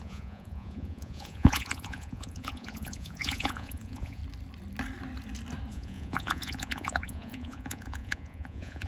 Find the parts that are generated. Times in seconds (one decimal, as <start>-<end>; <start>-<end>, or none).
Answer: 0.0-4.2; 5.7-8.9